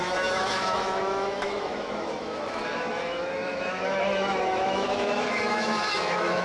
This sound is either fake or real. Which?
fake